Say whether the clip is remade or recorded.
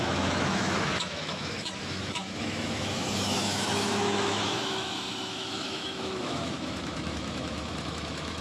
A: remade